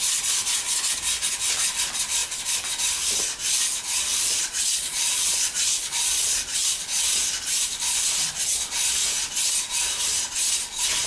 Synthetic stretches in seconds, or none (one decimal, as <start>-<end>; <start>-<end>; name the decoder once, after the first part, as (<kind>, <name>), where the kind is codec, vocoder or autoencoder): 4.1-7.0 (vocoder, Vocos)